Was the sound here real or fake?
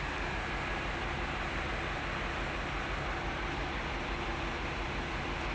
real